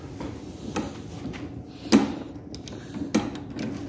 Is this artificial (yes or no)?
no